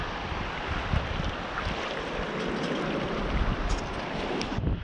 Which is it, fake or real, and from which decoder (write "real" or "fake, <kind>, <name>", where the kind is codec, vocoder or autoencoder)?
real